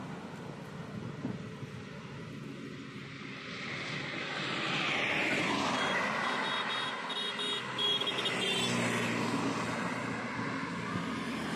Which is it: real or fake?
real